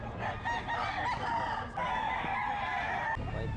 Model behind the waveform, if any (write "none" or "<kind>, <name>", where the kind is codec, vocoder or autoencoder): none